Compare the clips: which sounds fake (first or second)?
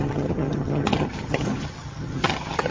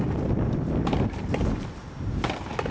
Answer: first